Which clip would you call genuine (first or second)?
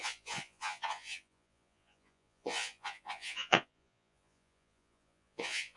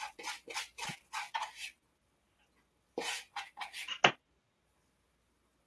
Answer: second